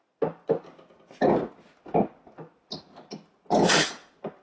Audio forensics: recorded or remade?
recorded